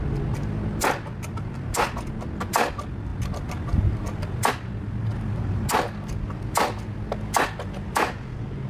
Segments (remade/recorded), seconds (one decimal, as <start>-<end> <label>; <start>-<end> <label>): 0.0-8.7 recorded